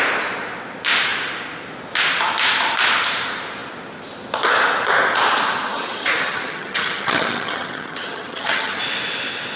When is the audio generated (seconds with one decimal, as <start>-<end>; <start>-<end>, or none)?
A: 5.7-8.8